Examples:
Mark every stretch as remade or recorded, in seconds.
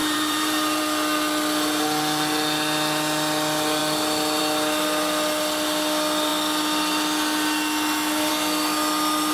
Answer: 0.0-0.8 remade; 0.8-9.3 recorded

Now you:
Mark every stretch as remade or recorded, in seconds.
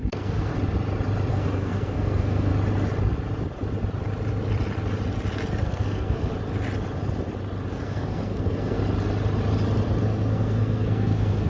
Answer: 0.0-0.5 remade; 0.5-1.3 recorded; 1.3-2.5 remade; 2.5-5.6 recorded; 5.6-6.3 remade; 6.3-7.7 recorded; 7.7-8.8 remade; 8.8-10.0 recorded; 10.0-11.5 remade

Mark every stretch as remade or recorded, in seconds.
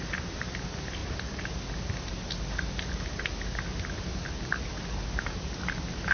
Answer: 0.0-6.1 recorded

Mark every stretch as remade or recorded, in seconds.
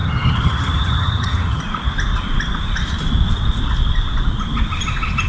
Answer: 0.0-1.6 remade; 1.6-5.3 recorded